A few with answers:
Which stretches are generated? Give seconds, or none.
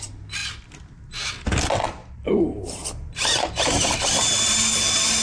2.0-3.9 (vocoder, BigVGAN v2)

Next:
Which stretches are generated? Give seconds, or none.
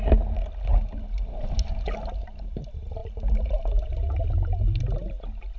0.7-2.6 (vocoder, BigVGAN v2); 3.0-4.0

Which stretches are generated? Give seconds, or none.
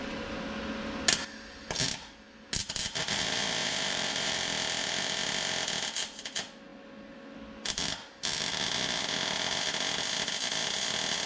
3.6-4.4 (vocoder, BigVGAN v2)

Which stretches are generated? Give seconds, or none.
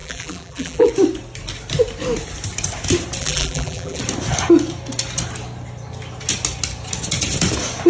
0.0-0.9 (vocoder, BigVGAN v2); 3.2-4.0